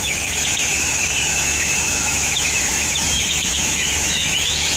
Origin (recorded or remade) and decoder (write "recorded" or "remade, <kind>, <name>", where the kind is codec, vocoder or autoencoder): remade, autoencoder, DAC-VAE